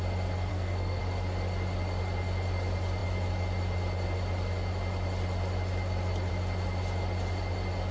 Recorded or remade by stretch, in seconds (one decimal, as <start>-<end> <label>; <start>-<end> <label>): 0.0-0.5 recorded; 0.5-1.0 remade; 1.0-7.9 recorded